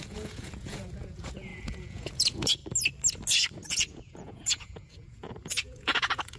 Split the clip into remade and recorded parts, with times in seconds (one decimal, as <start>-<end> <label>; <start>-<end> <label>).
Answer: 0.0-2.6 remade; 2.6-3.7 recorded; 3.7-6.4 remade